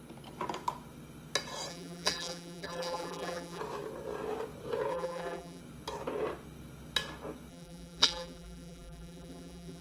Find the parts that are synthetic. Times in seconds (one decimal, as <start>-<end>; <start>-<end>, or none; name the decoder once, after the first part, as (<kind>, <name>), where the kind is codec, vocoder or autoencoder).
1.7-3.6 (vocoder, BigVGAN v2); 4.9-5.6; 7.5-9.8